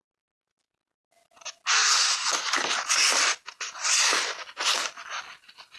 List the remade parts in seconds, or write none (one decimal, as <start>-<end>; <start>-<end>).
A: none